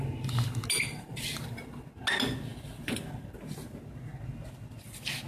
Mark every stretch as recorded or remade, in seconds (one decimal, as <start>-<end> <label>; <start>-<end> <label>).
0.0-1.1 recorded; 1.1-2.0 remade; 2.0-2.5 recorded; 2.5-3.1 remade; 3.1-5.3 recorded